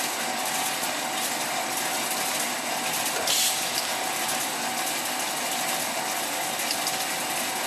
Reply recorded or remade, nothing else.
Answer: recorded